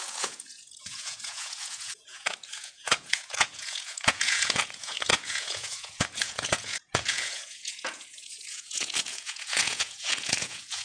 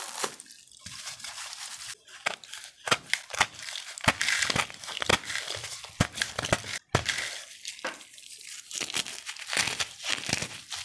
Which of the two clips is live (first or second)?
second